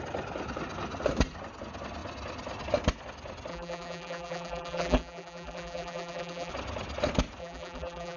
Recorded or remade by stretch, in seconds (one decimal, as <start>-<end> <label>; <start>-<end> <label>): 0.0-3.5 recorded; 3.5-6.5 remade; 6.5-7.4 recorded; 7.4-8.2 remade

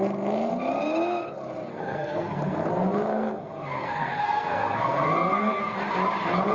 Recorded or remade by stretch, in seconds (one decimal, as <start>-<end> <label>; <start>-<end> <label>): 0.0-1.7 recorded; 1.7-2.7 remade; 2.7-3.1 recorded; 3.1-5.8 remade; 5.8-6.5 recorded

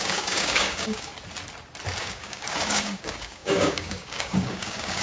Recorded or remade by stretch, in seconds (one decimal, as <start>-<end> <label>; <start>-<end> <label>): 0.0-1.1 remade; 1.1-2.0 recorded; 2.0-5.0 remade

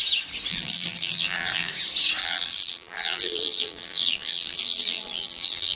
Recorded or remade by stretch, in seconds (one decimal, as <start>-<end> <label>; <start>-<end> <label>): 0.0-0.5 recorded; 0.5-1.7 remade; 1.7-2.2 recorded; 2.2-5.8 remade